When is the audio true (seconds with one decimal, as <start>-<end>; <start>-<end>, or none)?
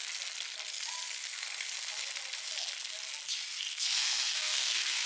0.0-3.7